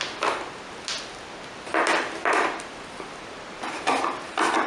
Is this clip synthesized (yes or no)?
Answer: no